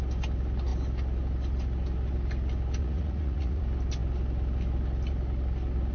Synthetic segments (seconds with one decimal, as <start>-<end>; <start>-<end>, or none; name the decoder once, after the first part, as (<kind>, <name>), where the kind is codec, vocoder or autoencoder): 2.8-3.6 (vocoder, Vocos)